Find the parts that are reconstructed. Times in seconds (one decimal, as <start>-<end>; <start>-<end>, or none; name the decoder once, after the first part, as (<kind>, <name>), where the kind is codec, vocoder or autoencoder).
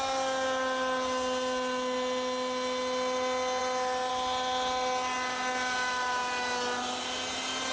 none